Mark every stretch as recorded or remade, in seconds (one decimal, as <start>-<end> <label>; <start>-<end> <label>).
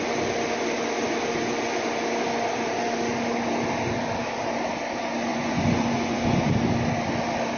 0.0-5.3 recorded; 5.3-6.5 remade; 6.5-7.6 recorded